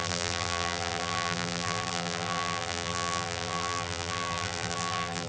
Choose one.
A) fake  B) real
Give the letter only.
A